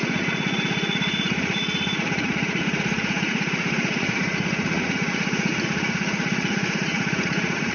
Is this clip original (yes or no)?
no